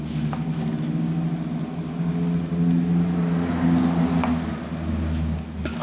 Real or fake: real